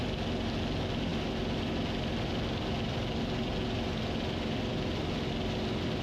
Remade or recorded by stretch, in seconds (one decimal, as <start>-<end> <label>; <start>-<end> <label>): 0.0-6.0 recorded